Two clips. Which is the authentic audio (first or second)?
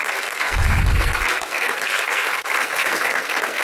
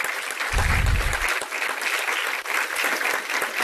second